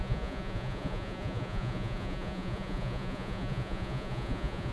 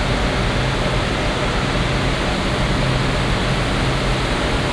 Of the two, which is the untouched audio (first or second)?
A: second